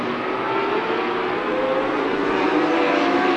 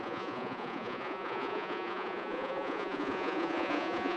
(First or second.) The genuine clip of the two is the first